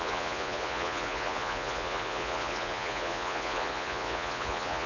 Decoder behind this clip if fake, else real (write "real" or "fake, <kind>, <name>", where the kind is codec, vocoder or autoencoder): fake, vocoder, Vocos